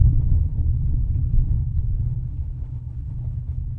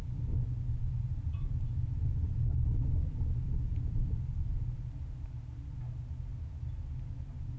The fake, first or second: first